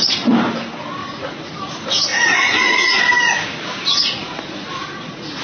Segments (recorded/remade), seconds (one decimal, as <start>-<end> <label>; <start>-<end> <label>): 0.0-1.0 recorded; 1.0-1.5 remade; 1.5-2.1 recorded; 2.1-3.0 remade; 3.0-3.9 recorded; 3.9-5.4 remade